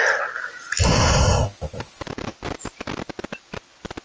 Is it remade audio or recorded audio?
recorded